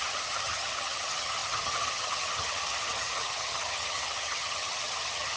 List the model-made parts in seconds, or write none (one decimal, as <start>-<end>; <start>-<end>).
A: 0.0-5.4